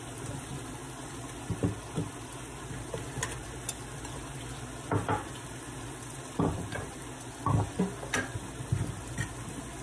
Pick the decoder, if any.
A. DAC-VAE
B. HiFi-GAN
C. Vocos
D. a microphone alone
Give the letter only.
D